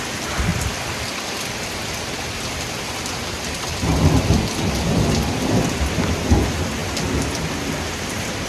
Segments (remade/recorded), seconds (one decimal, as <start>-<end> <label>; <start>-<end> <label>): 0.0-0.5 recorded; 0.5-2.5 remade; 2.5-3.9 recorded; 3.9-5.9 remade; 5.9-8.5 recorded